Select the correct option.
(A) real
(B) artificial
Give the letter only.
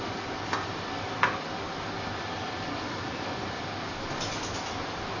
A